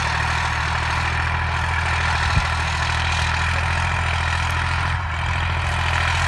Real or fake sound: real